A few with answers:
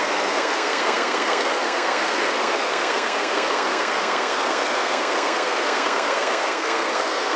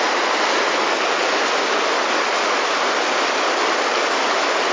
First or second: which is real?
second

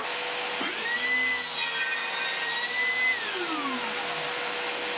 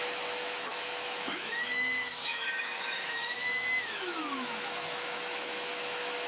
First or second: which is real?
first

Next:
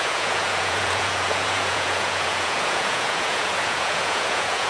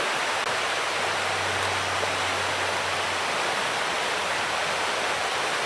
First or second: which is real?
second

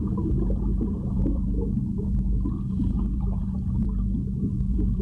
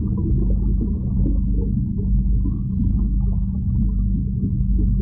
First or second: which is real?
second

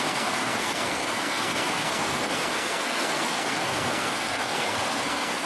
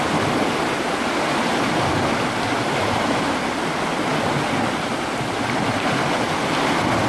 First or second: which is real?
second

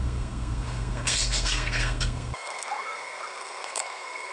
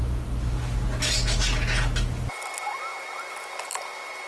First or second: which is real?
second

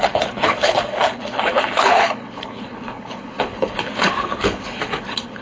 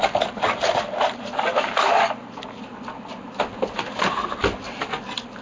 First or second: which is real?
second